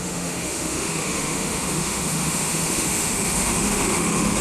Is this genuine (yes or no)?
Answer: no